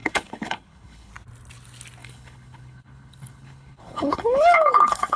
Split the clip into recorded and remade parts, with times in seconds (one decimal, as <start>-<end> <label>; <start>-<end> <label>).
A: 0.0-1.1 remade; 1.1-2.0 recorded; 2.0-5.2 remade

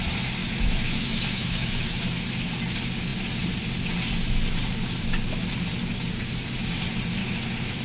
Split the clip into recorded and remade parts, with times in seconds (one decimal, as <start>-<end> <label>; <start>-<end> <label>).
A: 0.0-0.4 recorded; 0.4-2.0 remade; 2.0-7.2 recorded; 7.2-7.8 remade

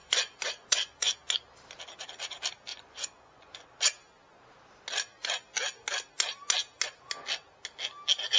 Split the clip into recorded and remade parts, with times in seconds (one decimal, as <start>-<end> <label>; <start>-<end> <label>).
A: 0.0-1.1 remade; 1.1-2.7 recorded; 2.7-3.7 remade; 3.7-8.4 recorded

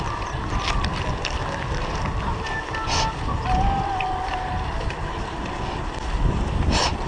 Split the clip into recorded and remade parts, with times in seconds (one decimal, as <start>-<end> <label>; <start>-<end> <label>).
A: 0.0-1.4 remade; 1.4-3.8 recorded; 3.8-7.1 remade

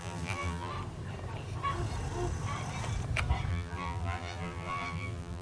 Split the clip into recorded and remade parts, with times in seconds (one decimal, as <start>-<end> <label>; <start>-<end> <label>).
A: 0.0-0.7 remade; 0.7-3.5 recorded; 3.5-5.4 remade